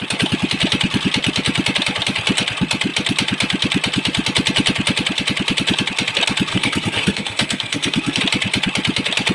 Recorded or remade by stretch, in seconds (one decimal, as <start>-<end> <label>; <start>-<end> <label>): 0.0-6.5 recorded; 6.5-8.2 remade; 8.2-9.3 recorded